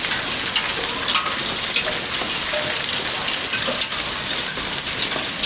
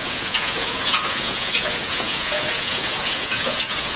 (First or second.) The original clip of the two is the first